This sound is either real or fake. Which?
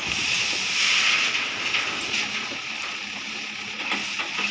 real